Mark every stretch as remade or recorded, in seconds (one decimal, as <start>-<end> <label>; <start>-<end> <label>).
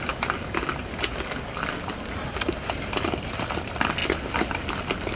0.0-5.2 recorded